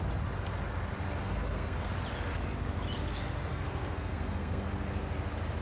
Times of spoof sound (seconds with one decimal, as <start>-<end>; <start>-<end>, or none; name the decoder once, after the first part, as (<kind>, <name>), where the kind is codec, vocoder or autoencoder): 1.2-1.9 (codec, SNAC); 3.5-4.6